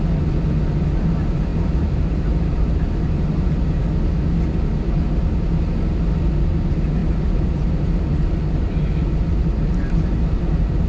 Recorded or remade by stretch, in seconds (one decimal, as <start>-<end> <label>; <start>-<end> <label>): 0.0-1.5 recorded; 1.5-3.8 remade; 3.8-7.0 recorded; 7.0-10.4 remade; 10.4-10.9 recorded